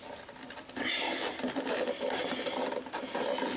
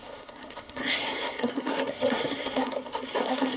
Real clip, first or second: first